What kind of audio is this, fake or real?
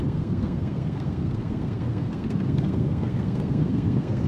fake